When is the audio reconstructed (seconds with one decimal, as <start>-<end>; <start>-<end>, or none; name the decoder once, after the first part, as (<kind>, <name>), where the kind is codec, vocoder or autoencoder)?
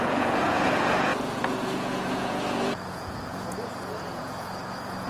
0.0-5.1 (vocoder, Vocos)